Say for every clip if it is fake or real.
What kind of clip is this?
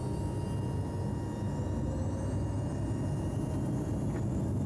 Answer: real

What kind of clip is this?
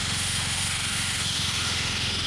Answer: fake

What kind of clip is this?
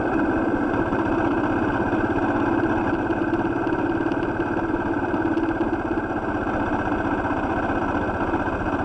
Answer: real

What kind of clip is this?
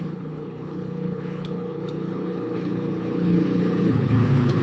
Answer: fake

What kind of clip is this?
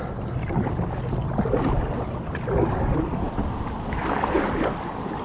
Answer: real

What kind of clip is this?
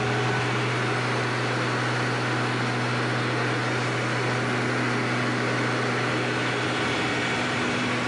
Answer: real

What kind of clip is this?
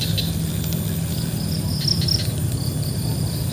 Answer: real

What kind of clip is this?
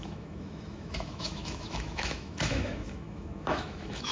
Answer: fake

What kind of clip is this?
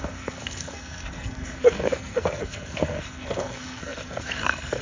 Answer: fake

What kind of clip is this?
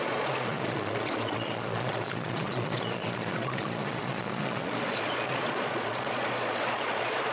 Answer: fake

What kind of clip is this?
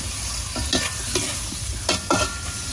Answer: real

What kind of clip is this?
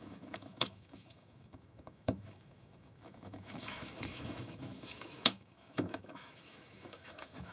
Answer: fake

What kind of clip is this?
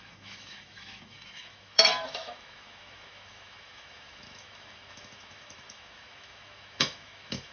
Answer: fake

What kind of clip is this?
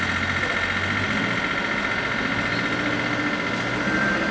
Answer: real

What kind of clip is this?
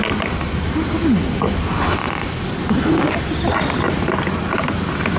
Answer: real